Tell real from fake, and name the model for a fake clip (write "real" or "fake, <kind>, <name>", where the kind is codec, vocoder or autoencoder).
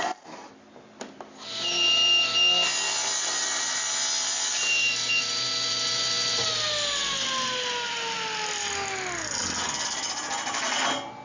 real